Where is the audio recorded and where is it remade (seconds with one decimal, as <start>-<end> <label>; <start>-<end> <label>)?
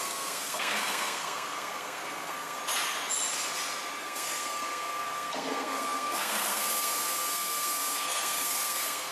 0.0-2.6 remade; 2.6-4.0 recorded; 4.0-9.1 remade